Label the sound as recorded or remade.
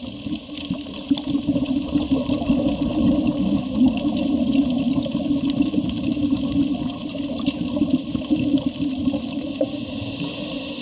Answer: recorded